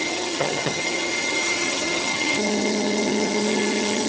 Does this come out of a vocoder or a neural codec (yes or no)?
yes